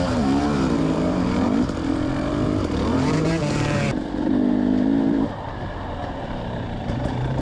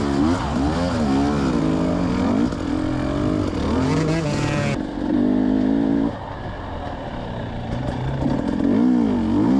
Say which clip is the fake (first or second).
first